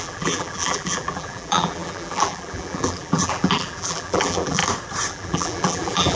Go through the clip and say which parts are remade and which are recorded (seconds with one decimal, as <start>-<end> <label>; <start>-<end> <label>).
0.0-4.6 remade; 4.6-5.1 recorded; 5.1-6.2 remade